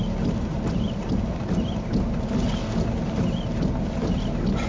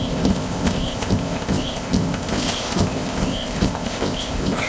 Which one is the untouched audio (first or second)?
first